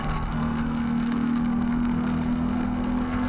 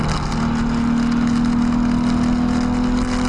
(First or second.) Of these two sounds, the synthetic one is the first